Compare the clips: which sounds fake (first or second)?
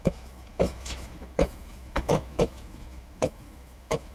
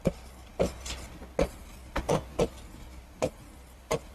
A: first